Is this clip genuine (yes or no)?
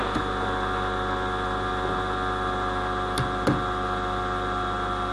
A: yes